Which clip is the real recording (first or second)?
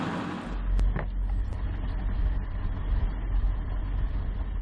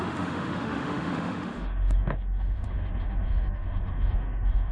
first